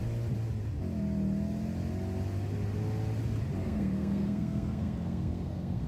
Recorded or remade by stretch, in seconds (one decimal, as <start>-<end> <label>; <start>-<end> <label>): 0.0-3.6 recorded; 3.6-5.9 remade